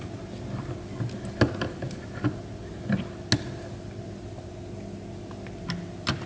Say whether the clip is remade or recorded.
recorded